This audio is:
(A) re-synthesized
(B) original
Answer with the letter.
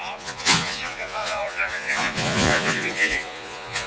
A